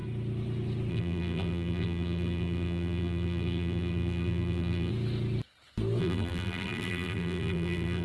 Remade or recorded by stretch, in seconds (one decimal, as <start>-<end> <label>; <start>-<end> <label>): 0.0-0.9 recorded; 0.9-4.9 remade; 4.9-6.0 recorded; 6.0-8.0 remade